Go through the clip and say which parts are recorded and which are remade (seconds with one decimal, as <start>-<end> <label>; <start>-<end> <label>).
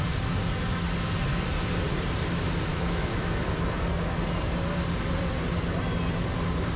0.0-2.7 recorded; 2.7-3.4 remade; 3.4-6.8 recorded